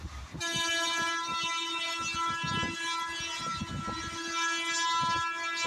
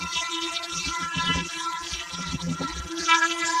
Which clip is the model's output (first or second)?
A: second